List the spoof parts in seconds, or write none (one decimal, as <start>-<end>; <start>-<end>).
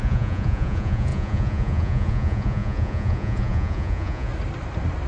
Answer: 0.0-4.3